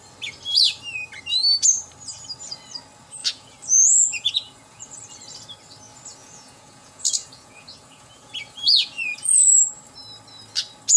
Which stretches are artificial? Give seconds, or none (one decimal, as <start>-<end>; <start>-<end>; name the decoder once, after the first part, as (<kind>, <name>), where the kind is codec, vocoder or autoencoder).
3.2-4.8 (vocoder, Vocos); 6.2-9.8